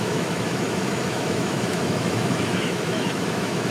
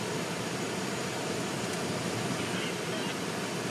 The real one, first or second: second